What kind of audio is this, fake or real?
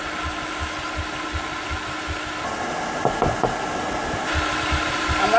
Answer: real